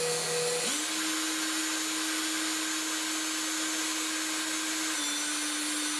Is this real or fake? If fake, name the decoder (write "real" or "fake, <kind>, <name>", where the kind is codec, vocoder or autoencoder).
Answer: real